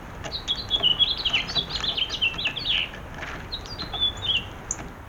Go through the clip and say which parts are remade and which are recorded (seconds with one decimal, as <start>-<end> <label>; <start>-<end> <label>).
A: 0.0-5.1 recorded